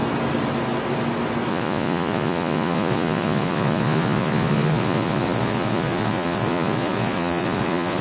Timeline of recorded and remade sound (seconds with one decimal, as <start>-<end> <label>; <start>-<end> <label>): 0.0-1.5 recorded; 1.5-8.0 remade